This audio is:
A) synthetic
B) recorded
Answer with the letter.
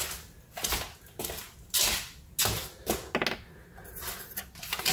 B